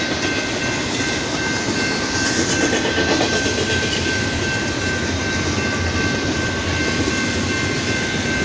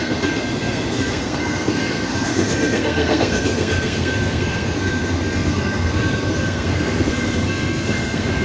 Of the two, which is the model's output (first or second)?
second